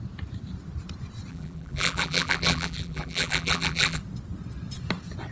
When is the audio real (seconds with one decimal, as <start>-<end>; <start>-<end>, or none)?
0.0-1.3; 4.0-5.3